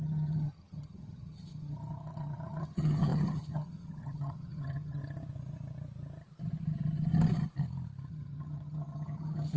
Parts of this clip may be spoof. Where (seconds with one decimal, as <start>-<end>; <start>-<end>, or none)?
0.0-5.0; 8.1-9.6